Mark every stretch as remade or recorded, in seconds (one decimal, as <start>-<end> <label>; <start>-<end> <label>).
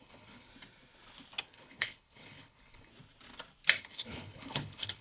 0.0-0.5 remade; 0.5-1.4 recorded; 1.4-2.9 remade; 2.9-3.8 recorded; 3.8-5.0 remade